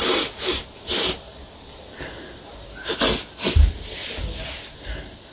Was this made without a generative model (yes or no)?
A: yes